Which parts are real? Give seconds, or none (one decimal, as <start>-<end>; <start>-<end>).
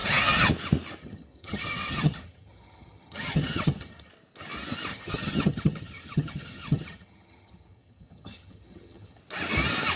0.5-1.0; 4.1-4.9; 9.2-10.0